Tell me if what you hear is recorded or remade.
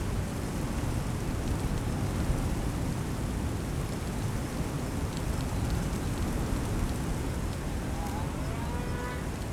recorded